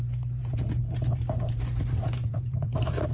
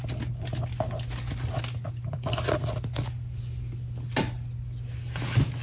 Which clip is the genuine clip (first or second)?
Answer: second